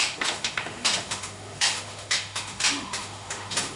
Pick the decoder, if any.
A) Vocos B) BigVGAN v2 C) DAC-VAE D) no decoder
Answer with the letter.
C